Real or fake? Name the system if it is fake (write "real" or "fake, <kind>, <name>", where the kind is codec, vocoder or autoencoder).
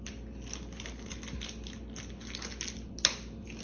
real